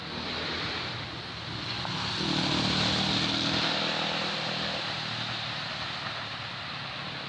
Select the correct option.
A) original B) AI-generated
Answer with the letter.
A